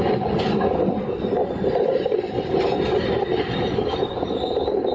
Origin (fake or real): real